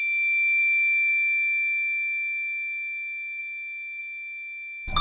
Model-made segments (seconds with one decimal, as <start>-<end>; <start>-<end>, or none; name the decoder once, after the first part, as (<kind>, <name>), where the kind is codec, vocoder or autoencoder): none